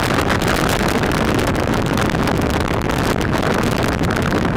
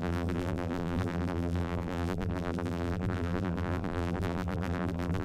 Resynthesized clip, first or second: second